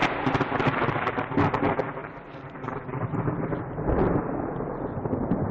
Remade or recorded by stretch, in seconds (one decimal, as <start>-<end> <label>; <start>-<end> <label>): 0.0-5.5 recorded